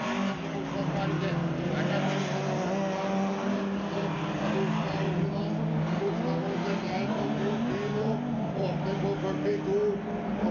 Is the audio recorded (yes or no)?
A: yes